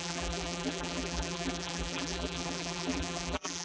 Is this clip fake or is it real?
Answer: fake